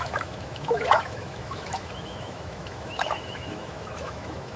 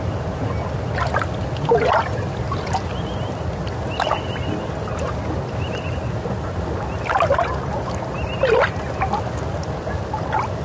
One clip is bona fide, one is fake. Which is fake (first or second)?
first